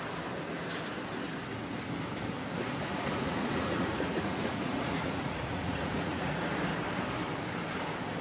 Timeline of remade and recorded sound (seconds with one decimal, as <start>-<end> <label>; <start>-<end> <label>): 0.0-2.9 recorded; 2.9-6.6 remade; 6.6-8.2 recorded